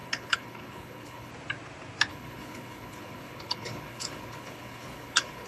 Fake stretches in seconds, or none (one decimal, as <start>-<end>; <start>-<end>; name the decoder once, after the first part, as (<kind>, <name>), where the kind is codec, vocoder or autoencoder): 0.0-1.3 (codec, HILCodec); 2.1-5.5